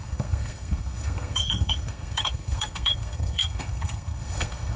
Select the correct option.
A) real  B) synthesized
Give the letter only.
B